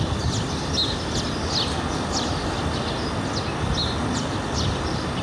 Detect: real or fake real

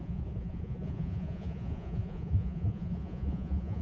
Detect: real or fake fake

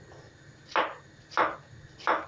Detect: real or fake real